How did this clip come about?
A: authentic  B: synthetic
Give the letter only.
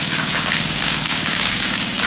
B